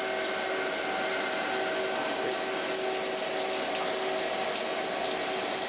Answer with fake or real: real